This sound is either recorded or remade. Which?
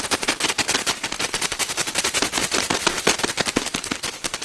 recorded